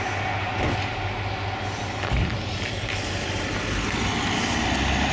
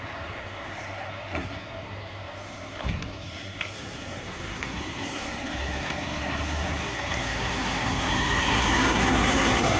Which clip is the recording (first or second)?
first